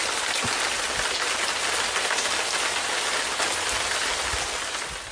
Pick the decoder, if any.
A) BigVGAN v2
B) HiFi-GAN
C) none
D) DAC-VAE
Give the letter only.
C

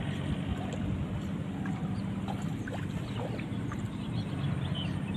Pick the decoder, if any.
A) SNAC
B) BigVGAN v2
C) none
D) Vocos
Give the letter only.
C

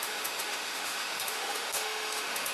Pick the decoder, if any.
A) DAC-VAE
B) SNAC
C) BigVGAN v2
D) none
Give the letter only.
A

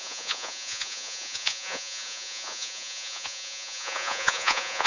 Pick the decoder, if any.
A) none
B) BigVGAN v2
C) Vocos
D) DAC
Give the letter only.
C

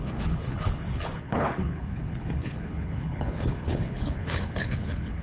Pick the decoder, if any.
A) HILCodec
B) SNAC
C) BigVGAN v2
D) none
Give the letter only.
A